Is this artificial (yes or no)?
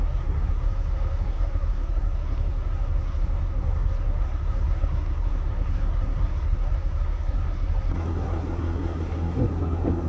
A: yes